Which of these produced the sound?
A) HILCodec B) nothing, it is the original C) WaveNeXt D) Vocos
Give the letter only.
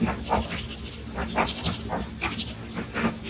B